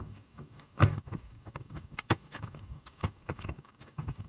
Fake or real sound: fake